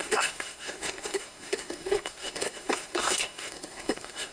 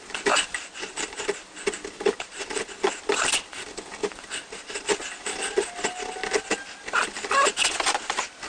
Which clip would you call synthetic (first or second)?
first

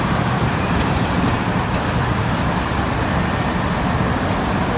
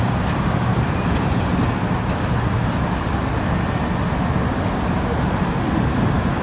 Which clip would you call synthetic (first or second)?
first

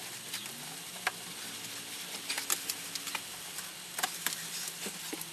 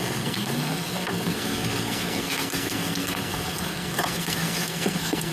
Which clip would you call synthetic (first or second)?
second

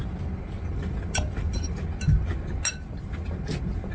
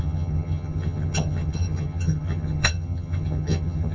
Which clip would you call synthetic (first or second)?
second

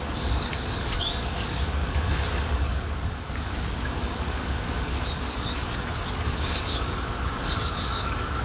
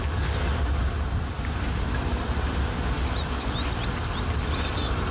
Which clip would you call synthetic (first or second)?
first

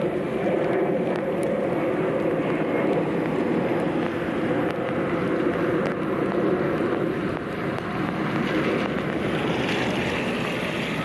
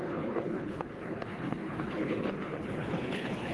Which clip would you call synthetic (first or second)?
second